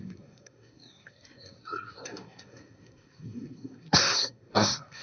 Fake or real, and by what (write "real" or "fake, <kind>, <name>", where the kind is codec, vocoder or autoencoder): fake, codec, SNAC